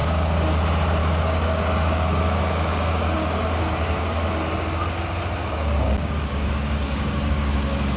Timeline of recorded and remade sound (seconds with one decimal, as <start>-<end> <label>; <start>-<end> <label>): 0.0-0.6 remade; 0.6-1.0 recorded; 1.0-4.3 remade; 4.3-5.4 recorded; 5.4-7.5 remade; 7.5-8.0 recorded